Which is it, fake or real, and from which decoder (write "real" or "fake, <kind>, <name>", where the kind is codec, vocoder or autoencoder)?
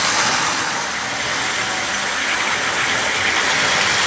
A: real